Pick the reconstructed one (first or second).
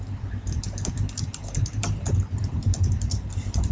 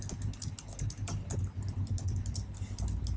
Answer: first